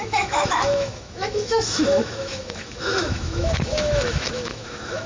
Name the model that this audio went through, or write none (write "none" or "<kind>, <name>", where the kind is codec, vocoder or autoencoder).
autoencoder, DAC-VAE